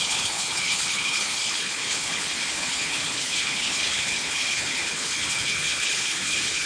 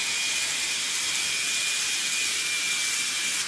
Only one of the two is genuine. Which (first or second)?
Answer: second